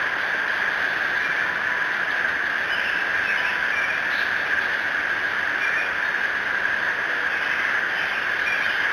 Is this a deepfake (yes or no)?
no